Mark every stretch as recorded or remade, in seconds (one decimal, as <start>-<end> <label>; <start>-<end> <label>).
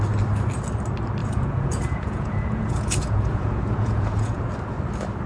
0.0-1.2 recorded; 1.2-4.4 remade; 4.4-5.3 recorded